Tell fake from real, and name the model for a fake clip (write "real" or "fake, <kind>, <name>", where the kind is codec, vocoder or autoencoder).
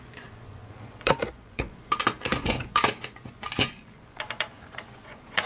fake, vocoder, Vocos